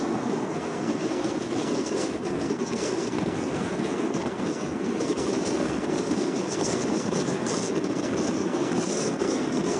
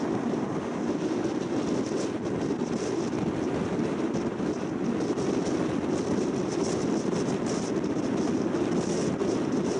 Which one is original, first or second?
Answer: second